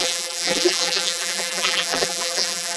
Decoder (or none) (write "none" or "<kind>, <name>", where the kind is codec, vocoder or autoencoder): vocoder, BigVGAN v2